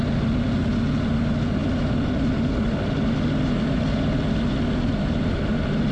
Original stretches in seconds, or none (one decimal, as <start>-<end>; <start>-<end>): 0.0-5.9